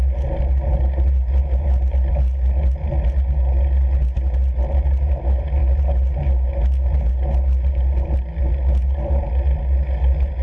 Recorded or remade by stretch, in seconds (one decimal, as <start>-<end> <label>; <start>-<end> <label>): 0.0-10.4 recorded